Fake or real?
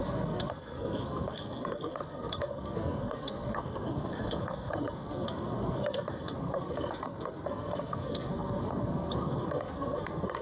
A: fake